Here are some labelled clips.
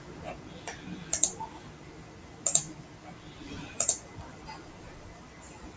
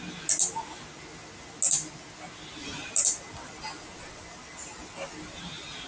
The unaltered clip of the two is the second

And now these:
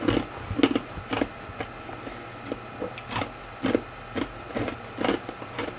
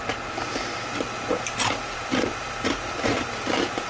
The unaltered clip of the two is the first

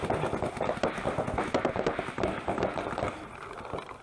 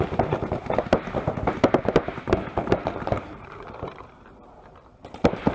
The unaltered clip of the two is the first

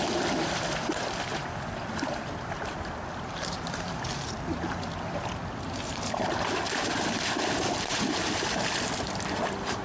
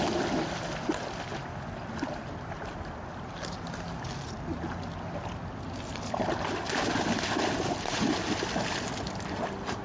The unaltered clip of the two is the second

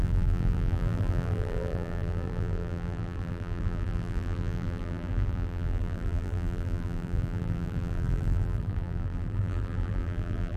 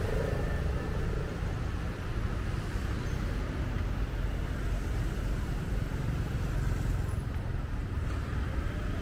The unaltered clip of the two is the second